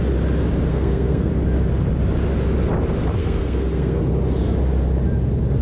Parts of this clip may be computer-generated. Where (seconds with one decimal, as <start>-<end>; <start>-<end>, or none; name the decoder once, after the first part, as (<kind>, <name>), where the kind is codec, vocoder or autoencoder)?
0.7-1.3 (codec, SNAC); 3.2-4.0